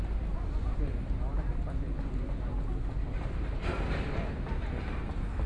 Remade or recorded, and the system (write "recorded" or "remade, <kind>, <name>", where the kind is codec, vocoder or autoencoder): recorded